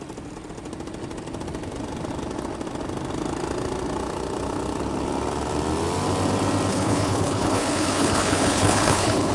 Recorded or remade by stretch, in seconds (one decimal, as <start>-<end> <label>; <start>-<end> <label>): 0.0-6.7 recorded; 6.7-9.3 remade

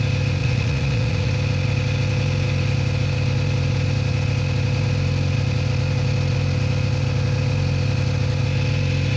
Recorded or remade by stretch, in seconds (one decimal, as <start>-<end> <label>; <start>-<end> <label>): 0.0-0.4 recorded; 0.4-1.3 remade; 1.3-9.2 recorded